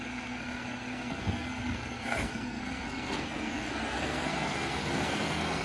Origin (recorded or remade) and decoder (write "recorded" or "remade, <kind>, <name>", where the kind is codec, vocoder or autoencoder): remade, codec, SNAC